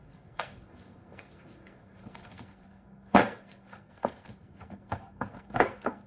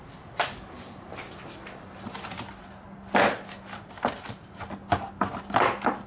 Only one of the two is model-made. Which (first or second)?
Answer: first